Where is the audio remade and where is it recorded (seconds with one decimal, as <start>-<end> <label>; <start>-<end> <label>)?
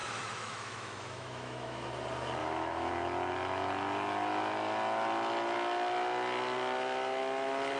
0.0-1.9 remade; 1.9-2.4 recorded; 2.4-2.9 remade; 2.9-7.8 recorded